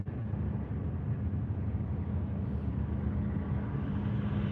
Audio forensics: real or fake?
real